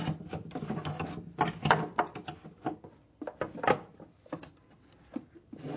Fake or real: real